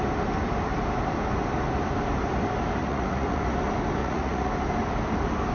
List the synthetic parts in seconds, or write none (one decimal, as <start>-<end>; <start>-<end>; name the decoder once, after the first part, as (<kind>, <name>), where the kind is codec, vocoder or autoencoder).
2.8-3.4 (vocoder, Vocos); 4.0-4.5